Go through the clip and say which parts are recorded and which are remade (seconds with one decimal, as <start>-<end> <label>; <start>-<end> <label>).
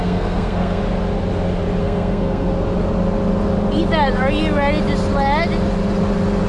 0.0-0.8 remade; 0.8-1.8 recorded; 1.8-2.5 remade; 2.5-6.5 recorded